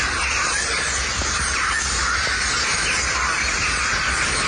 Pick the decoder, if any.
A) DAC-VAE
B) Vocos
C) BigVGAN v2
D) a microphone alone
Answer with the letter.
D